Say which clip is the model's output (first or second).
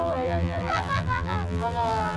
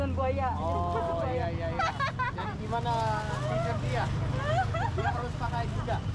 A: first